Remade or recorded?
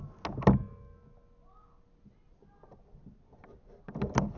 recorded